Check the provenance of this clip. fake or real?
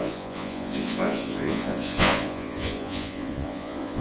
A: fake